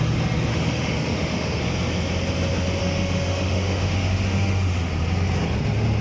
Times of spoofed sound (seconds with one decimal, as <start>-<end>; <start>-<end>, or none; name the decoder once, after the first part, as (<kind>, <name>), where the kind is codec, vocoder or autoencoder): 0.5-1.6 (autoencoder, DAC-VAE); 2.8-4.9

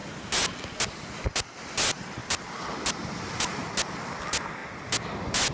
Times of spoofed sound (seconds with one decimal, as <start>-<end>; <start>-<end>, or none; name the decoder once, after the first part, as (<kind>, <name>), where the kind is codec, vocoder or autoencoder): none